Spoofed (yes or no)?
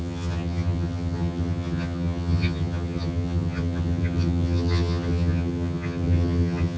yes